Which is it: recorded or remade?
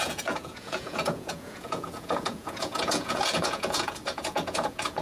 remade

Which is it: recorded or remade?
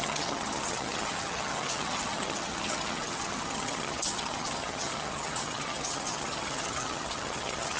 remade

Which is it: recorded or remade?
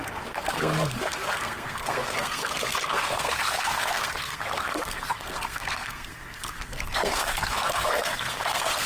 remade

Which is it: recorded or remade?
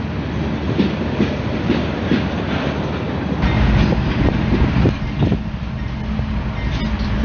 recorded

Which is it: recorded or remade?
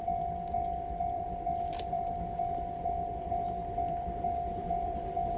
remade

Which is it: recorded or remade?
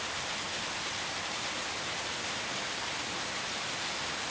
recorded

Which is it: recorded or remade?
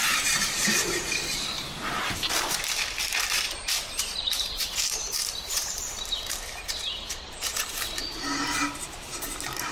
remade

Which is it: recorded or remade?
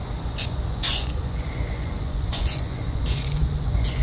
remade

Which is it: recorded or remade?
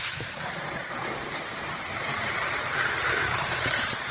remade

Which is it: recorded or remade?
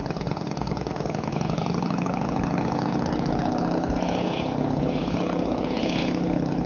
remade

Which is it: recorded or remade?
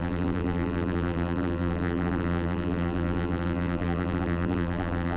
remade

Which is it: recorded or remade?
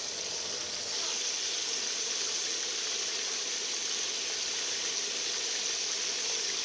recorded